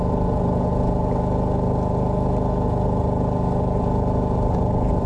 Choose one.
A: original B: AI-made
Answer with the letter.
A